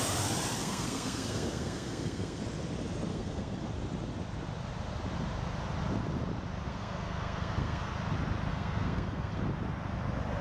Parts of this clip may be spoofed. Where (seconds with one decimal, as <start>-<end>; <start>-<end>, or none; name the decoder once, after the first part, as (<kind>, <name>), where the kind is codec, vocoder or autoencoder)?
0.6-2.4 (codec, SNAC); 3.1-3.7; 6.7-7.9; 8.5-9.4